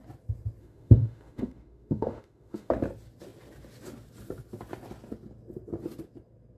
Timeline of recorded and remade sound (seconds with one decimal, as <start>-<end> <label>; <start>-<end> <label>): 0.0-0.6 recorded; 0.6-2.7 remade; 2.7-6.6 recorded